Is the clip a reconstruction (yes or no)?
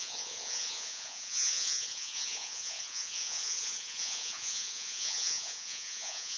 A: yes